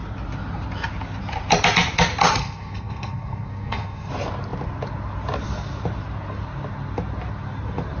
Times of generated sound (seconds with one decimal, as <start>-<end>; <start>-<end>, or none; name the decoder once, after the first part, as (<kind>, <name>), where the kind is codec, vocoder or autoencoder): 2.4-4.1 (codec, SNAC)

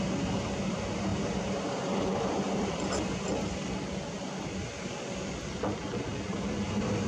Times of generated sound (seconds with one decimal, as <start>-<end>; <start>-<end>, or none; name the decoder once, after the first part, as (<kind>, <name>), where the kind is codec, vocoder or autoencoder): 1.1-2.7 (vocoder, BigVGAN v2)

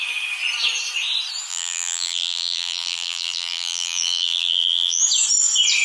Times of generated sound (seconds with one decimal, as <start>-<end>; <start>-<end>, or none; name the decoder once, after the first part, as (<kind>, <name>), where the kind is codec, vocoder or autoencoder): 1.5-5.0 (vocoder, BigVGAN v2)

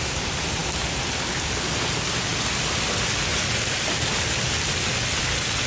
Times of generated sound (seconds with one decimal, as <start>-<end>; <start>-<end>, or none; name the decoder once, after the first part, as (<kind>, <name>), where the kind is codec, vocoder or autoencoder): none

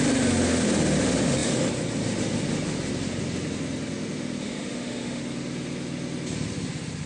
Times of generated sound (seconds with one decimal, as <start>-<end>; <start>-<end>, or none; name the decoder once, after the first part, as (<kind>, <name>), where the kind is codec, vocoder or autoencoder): 4.4-5.2 (autoencoder, DAC-VAE)

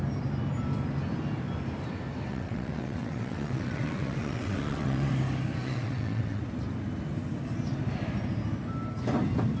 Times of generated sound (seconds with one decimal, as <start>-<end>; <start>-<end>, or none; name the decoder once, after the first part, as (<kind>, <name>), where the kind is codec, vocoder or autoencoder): 2.3-5.1 (vocoder, WaveNeXt); 5.6-6.4

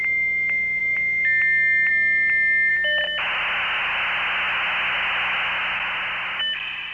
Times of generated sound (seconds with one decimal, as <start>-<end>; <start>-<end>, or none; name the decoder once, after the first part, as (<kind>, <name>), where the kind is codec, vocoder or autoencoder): none

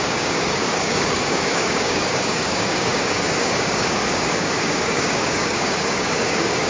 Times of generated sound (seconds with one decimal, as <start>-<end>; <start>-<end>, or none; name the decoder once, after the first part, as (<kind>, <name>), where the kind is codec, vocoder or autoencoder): 0.0-6.7 (codec, DAC)